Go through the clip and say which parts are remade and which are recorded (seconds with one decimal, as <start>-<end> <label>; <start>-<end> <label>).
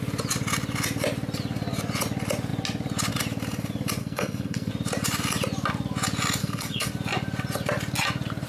0.0-4.0 recorded; 4.0-4.7 remade; 4.7-6.4 recorded; 6.4-6.9 remade; 6.9-8.5 recorded